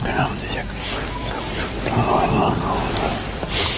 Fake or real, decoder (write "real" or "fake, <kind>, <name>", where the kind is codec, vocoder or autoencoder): fake, vocoder, BigVGAN v2